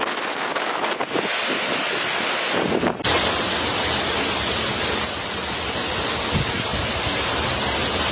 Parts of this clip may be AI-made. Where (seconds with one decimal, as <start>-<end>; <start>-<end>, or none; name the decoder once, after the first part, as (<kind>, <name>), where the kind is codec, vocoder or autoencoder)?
none